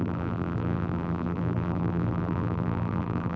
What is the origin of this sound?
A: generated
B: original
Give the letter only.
A